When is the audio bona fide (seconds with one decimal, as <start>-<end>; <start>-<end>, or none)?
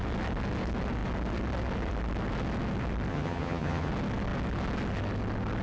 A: 0.0-3.1; 3.9-5.6